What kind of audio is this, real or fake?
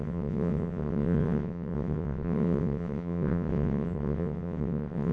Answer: fake